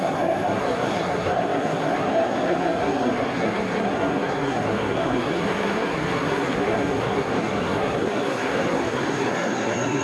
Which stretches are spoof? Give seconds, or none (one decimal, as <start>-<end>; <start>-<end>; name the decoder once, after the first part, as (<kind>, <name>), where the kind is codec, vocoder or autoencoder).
0.0-10.0 (codec, SNAC)